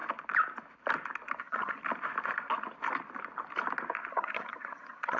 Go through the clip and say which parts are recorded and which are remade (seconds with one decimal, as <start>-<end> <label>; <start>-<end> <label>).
0.0-1.4 recorded; 1.4-1.8 remade; 1.8-4.1 recorded; 4.1-5.2 remade